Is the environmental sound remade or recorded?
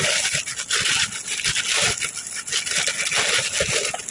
recorded